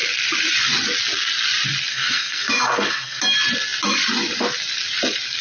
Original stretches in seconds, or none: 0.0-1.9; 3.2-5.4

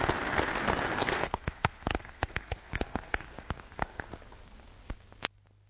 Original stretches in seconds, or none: 0.0-1.0; 4.0-5.7